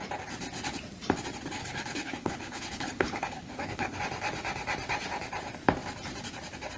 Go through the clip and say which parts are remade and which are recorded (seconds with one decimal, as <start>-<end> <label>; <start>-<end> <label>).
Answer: 0.0-1.6 recorded; 1.6-4.0 remade; 4.0-6.8 recorded